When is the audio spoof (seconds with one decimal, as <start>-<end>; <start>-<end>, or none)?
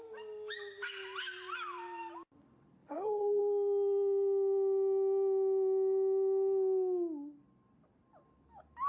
2.8-3.4